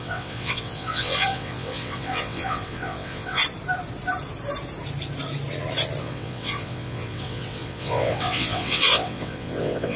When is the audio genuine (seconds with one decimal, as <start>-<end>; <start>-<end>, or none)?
3.4-6.0